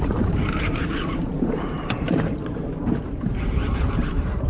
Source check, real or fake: fake